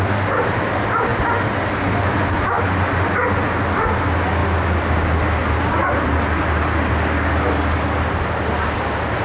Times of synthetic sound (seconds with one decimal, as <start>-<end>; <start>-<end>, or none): none